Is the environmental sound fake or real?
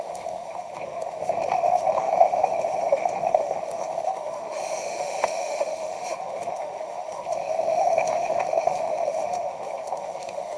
fake